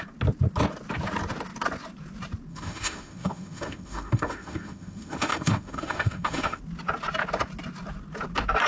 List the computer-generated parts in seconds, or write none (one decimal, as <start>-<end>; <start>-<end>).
2.5-6.6

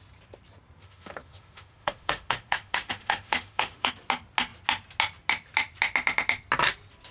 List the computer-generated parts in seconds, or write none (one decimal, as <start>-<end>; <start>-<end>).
0.8-3.9

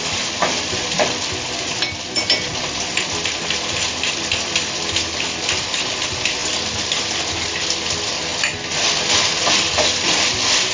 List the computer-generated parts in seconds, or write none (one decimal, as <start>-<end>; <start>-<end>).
none

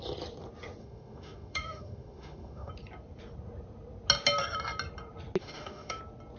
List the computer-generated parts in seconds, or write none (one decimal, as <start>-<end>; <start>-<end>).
0.8-2.7; 5.4-6.0

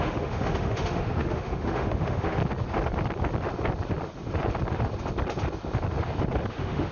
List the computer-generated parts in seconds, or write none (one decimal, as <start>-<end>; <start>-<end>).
0.0-2.4; 6.5-6.9

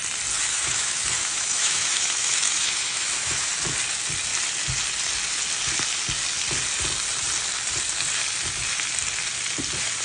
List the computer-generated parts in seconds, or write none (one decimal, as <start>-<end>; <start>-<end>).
0.5-3.5

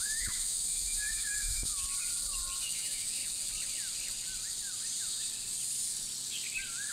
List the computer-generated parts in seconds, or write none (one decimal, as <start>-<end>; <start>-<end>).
0.0-1.7; 2.6-3.2